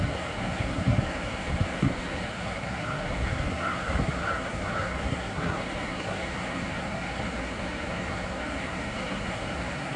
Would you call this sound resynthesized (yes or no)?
yes